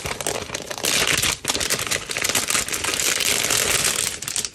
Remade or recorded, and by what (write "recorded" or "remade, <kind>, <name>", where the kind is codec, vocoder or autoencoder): recorded